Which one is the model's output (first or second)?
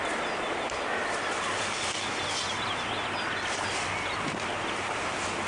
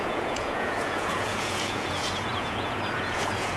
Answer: second